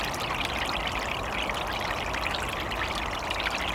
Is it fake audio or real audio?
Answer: real